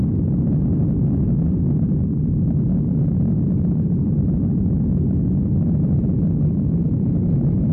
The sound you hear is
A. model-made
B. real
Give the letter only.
B